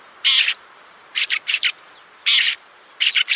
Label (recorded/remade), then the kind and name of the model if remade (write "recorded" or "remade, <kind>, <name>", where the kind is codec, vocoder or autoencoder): recorded